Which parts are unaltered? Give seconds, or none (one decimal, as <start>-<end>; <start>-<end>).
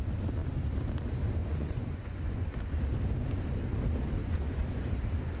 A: 0.0-1.4; 2.6-4.2; 4.9-5.4